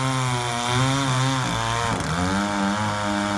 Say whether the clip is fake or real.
real